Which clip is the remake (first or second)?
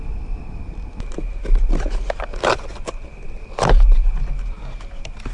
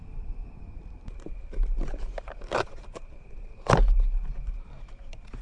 second